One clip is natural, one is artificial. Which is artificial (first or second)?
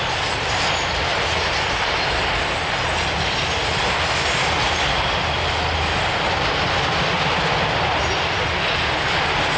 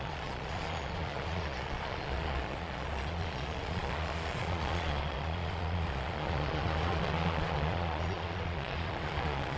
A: second